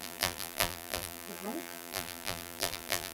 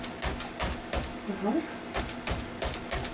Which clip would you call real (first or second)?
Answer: second